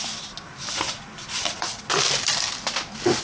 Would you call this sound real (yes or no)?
no